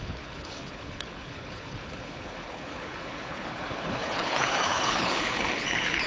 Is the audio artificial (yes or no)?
yes